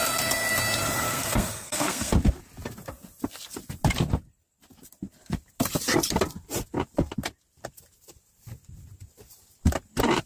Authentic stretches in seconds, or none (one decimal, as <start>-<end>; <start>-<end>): 0.0-1.1; 2.1-10.3